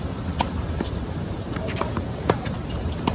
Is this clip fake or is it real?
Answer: fake